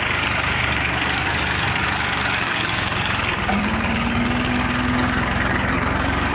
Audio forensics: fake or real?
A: fake